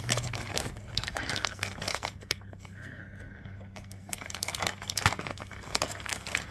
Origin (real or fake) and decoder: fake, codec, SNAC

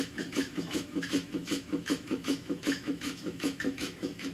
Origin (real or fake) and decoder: fake, autoencoder, DAC-VAE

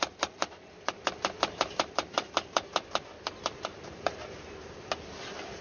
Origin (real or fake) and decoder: fake, vocoder, BigVGAN v2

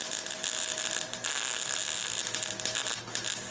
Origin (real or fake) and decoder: real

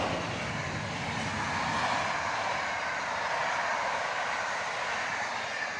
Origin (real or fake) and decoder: real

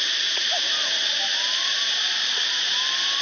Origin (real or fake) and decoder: real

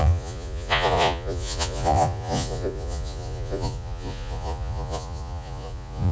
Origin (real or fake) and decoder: fake, vocoder, Vocos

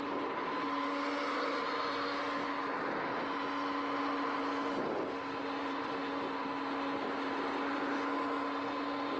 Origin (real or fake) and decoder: real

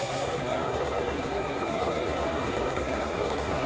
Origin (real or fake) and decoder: fake, codec, SNAC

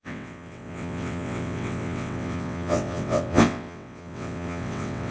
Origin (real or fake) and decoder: fake, vocoder, WaveNeXt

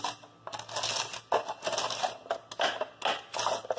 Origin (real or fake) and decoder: real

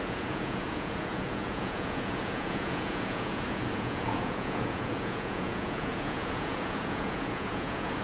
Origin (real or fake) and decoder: fake, vocoder, Vocos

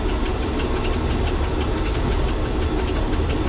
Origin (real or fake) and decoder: real